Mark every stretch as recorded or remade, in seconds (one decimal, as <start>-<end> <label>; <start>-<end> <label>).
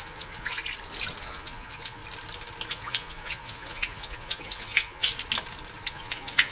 0.0-0.6 remade; 0.6-1.2 recorded; 1.2-2.0 remade; 2.0-2.7 recorded; 2.7-5.1 remade; 5.1-5.9 recorded; 5.9-6.5 remade